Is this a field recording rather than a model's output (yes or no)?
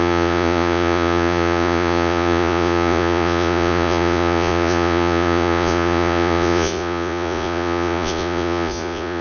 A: no